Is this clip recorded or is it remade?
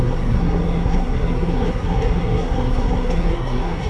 remade